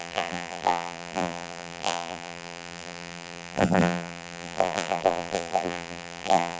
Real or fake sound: fake